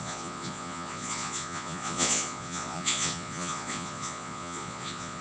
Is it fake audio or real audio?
fake